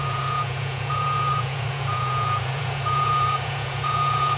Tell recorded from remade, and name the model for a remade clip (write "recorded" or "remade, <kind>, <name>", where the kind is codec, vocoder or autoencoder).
remade, vocoder, Vocos